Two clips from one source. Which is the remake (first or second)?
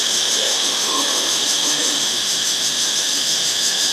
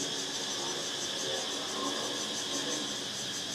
first